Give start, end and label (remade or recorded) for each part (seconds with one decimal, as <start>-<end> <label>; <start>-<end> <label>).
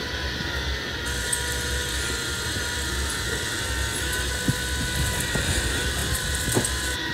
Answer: 0.0-7.1 recorded